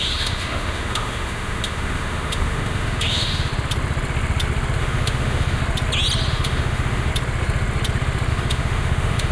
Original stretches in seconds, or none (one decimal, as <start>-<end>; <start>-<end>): 3.5-4.8; 5.6-6.3; 7.1-8.3